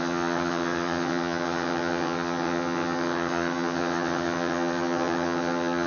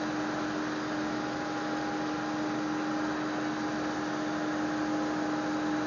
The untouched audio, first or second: second